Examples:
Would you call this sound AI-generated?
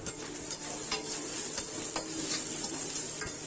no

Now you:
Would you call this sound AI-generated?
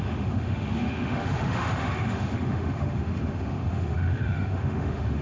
yes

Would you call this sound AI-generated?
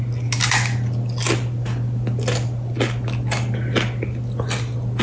no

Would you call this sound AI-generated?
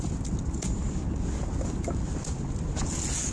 no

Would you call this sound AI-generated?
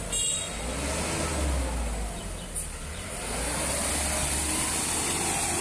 no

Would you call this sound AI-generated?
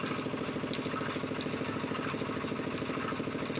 no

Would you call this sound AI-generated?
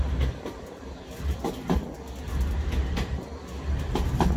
no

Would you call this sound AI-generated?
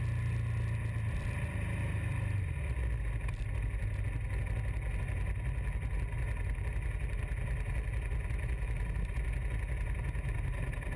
no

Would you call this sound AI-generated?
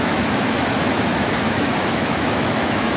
yes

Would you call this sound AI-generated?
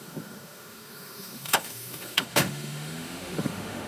yes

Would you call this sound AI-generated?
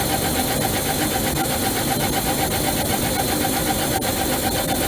no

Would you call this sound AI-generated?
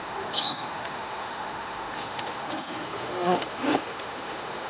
yes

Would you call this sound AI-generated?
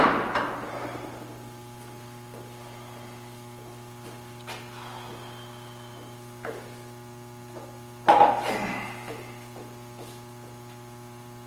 no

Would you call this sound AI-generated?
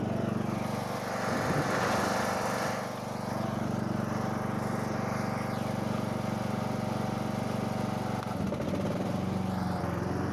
no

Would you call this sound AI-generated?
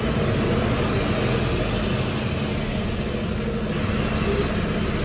no